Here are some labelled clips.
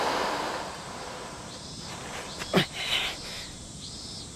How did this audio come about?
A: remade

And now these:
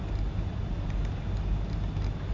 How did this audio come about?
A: recorded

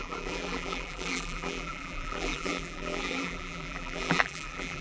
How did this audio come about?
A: remade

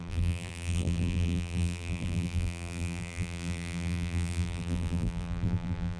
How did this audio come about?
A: remade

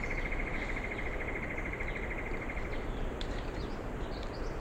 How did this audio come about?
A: remade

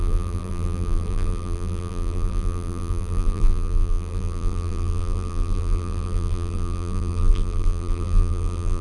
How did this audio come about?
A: remade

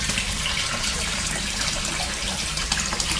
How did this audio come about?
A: remade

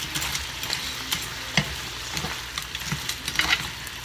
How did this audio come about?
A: recorded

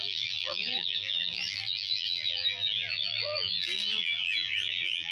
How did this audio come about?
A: remade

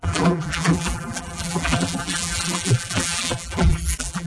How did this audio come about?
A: remade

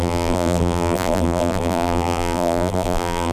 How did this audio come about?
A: remade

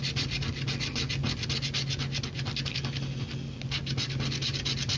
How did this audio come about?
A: recorded